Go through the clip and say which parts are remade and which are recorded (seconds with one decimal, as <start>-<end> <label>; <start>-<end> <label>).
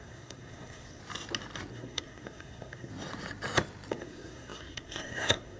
0.0-1.0 remade; 1.0-1.7 recorded; 1.7-2.9 remade; 2.9-3.9 recorded; 3.9-5.6 remade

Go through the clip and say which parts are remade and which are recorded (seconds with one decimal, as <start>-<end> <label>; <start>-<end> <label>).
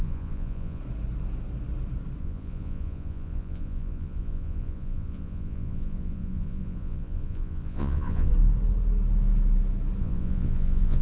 0.0-0.8 remade; 0.8-2.2 recorded; 2.2-8.3 remade; 8.3-10.0 recorded; 10.0-11.0 remade